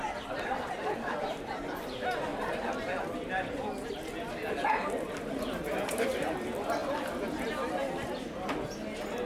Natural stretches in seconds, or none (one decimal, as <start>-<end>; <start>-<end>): 2.3-4.9; 6.8-9.3